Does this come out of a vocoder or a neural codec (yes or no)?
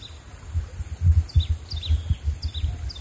no